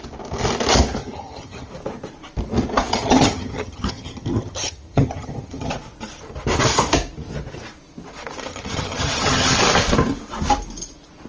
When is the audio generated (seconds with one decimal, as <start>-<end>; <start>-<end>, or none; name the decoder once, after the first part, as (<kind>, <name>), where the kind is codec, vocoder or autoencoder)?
1.0-1.7 (vocoder, HiFi-GAN); 2.9-5.7; 8.5-9.6